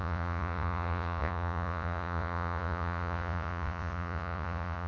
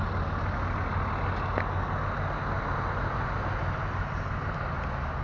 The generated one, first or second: first